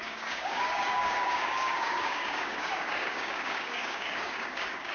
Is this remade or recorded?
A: remade